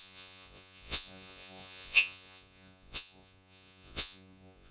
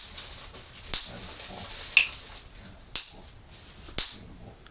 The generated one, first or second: first